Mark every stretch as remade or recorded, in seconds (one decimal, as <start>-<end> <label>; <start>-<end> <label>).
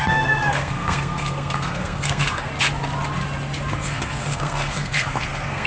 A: 0.0-2.5 remade; 2.5-3.7 recorded; 3.7-5.7 remade